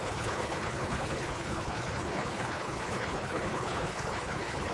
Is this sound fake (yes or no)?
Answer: yes